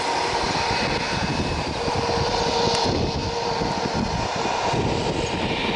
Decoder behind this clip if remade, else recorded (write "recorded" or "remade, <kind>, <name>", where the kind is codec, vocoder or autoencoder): recorded